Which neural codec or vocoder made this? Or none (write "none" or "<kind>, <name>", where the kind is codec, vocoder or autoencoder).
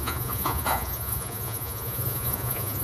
vocoder, Vocos